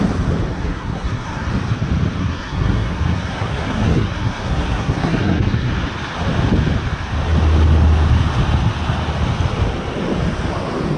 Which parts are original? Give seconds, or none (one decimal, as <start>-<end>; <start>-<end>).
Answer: 0.0-0.5; 1.5-2.2; 5.7-11.0